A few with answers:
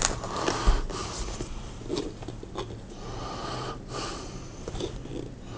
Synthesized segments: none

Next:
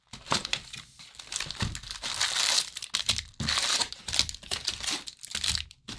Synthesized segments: none

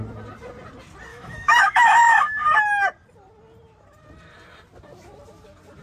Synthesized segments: 1.1-2.5 (autoencoder, DAC-VAE)

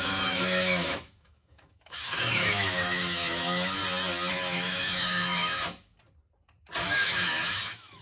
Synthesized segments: 0.0-3.8 (autoencoder, DAC-VAE); 4.3-5.9; 6.8-8.0

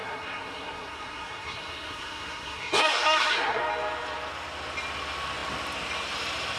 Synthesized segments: 0.0-3.6 (codec, SNAC)

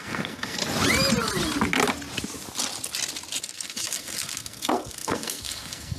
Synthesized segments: 0.0-0.6 (codec, SNAC); 3.4-6.0